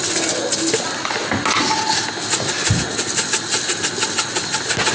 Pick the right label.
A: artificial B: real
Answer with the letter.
B